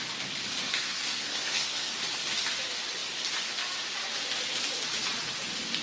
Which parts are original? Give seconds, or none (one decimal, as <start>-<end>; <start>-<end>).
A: 0.0-0.6; 1.9-5.8